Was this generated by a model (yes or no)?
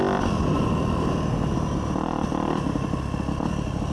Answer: no